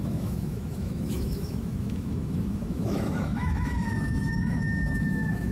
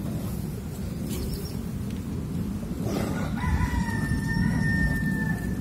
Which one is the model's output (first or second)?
first